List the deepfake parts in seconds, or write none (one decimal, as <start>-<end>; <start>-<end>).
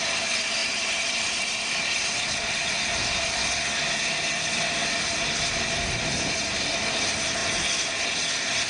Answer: 0.6-2.7